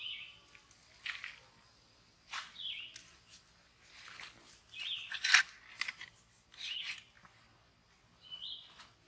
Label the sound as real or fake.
real